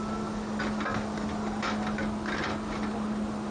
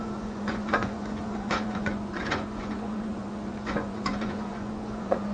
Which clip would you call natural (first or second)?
first